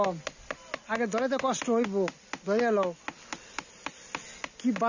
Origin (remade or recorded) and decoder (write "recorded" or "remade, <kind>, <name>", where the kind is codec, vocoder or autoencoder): recorded